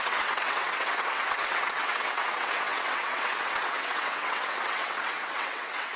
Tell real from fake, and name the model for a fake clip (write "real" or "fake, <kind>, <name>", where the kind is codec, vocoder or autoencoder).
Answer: fake, vocoder, WaveNeXt